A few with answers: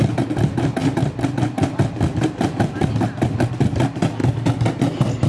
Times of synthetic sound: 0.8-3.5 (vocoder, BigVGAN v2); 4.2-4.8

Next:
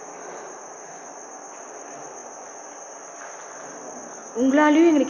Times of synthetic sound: 2.2-3.4 (vocoder, BigVGAN v2)

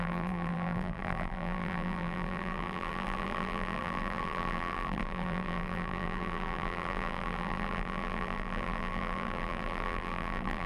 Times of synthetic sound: 0.0-10.7 (vocoder, BigVGAN v2)

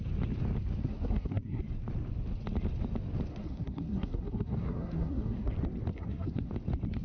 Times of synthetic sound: 0.8-1.6 (codec, SNAC); 3.3-5.5; 5.9-6.5